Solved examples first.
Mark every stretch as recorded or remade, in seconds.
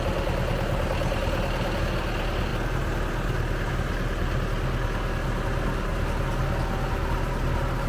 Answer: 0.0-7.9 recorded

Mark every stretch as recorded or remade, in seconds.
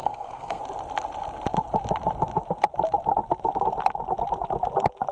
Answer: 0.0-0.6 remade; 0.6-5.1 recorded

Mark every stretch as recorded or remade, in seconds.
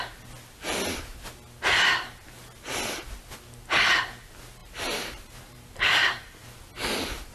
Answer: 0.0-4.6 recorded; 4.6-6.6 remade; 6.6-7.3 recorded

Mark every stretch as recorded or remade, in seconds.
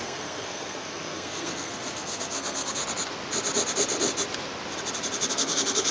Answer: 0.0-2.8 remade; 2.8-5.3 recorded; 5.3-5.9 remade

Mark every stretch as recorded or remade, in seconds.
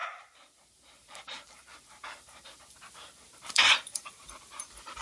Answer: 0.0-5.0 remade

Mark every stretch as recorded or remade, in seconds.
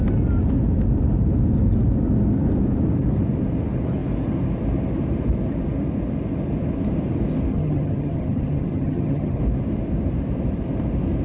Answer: 0.0-7.5 recorded; 7.5-9.4 remade; 9.4-11.2 recorded